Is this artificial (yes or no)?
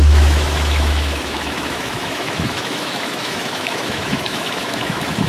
yes